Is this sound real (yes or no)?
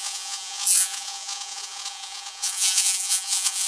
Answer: no